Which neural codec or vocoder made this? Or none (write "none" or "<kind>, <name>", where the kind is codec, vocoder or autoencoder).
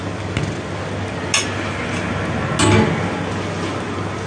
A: none